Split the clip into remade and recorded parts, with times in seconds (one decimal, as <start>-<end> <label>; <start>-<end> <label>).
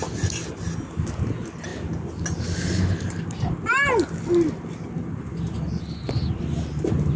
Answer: 0.0-7.2 recorded